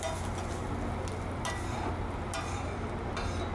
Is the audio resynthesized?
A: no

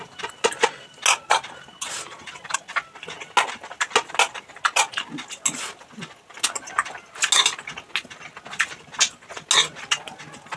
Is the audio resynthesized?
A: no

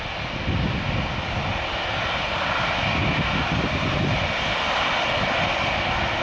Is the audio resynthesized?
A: no